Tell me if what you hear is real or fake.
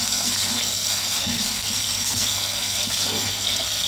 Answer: fake